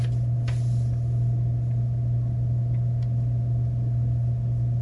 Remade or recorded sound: recorded